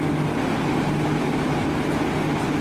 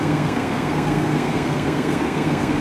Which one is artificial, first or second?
second